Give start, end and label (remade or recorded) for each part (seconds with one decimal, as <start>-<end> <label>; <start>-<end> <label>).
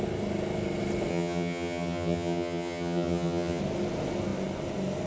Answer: 0.0-1.1 recorded; 1.1-3.6 remade; 3.6-5.1 recorded